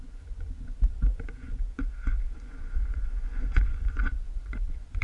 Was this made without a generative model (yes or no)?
no